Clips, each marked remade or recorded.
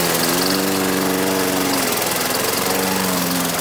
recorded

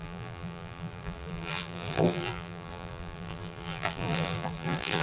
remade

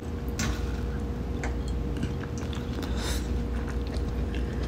recorded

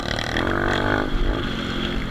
recorded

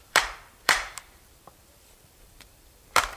remade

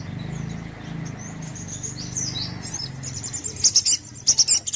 recorded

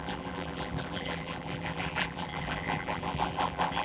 remade